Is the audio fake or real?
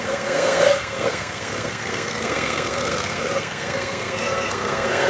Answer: fake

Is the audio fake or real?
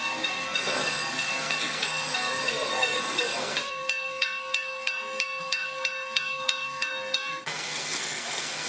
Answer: fake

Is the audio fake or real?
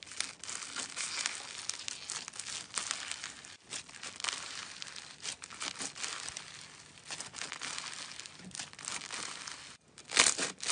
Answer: real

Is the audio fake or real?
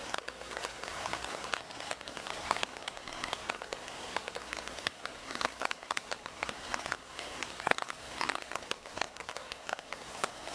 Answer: fake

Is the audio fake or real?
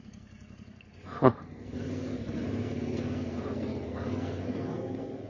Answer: fake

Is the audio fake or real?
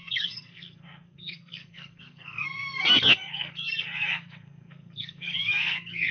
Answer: fake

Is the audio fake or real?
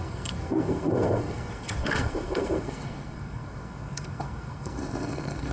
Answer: fake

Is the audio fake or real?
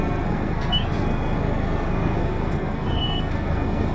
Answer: fake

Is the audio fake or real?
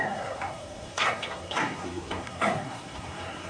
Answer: fake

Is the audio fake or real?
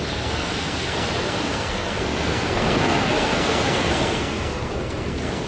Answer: fake